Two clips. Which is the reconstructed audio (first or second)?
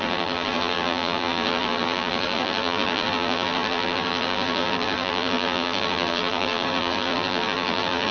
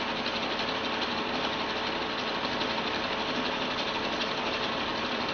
first